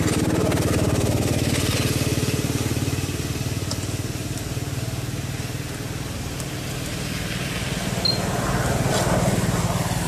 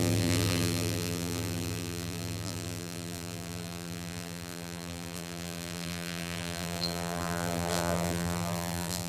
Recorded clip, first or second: first